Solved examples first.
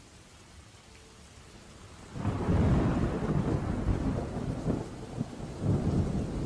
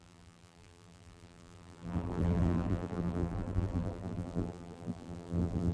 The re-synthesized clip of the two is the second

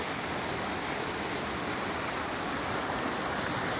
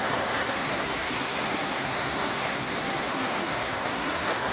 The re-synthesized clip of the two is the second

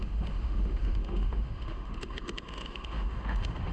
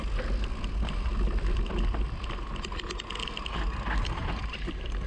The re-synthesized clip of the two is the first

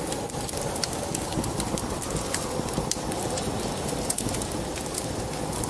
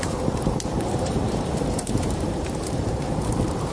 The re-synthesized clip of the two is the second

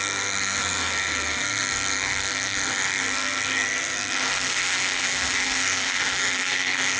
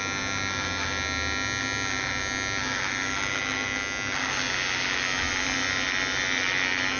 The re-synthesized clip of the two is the first